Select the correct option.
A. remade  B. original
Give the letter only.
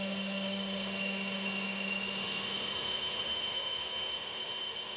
A